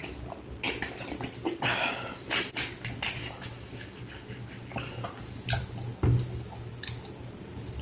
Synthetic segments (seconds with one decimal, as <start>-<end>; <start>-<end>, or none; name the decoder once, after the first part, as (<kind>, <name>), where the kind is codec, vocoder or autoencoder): 3.2-4.0 (autoencoder, DAC-VAE)